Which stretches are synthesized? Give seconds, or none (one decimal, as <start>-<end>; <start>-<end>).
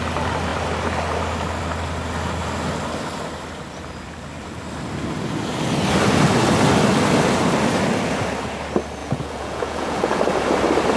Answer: 9.0-10.2